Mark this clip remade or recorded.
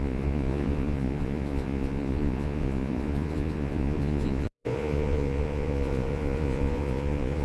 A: remade